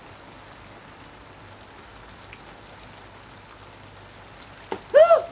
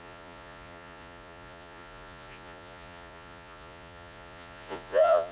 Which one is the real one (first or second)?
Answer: first